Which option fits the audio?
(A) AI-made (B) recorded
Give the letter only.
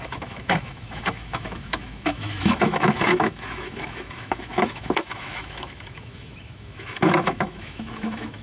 A